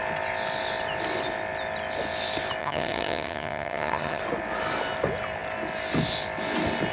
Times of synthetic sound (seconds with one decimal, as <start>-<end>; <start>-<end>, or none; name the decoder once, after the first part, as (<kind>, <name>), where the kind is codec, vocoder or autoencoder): 2.6-4.2 (vocoder, HiFi-GAN)